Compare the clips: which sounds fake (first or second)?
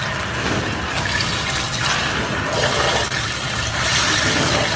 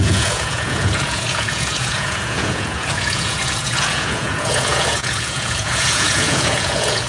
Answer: second